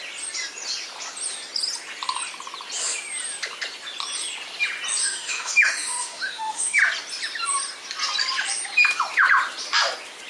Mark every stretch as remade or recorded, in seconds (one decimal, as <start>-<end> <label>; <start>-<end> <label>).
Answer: 0.0-5.0 recorded; 5.0-6.8 remade; 6.8-10.3 recorded